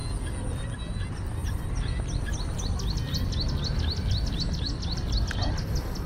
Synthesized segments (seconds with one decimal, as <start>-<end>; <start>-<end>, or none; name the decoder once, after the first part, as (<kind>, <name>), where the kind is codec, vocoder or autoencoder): none